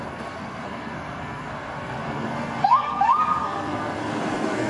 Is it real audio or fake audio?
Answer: fake